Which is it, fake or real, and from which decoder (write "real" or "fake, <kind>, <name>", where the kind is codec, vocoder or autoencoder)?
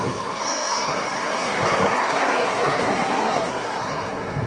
fake, codec, SNAC